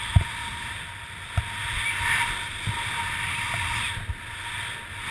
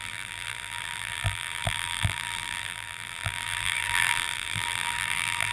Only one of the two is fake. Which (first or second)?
second